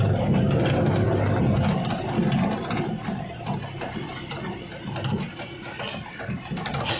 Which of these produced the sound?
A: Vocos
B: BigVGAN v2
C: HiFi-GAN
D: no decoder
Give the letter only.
D